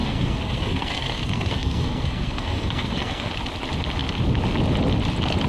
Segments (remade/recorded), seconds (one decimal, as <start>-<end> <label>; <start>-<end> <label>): 0.0-3.3 remade; 3.3-5.5 recorded